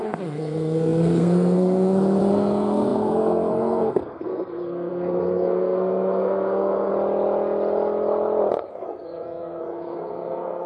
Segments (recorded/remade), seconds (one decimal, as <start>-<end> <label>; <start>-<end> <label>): 0.0-6.9 remade; 6.9-8.7 recorded; 8.7-10.7 remade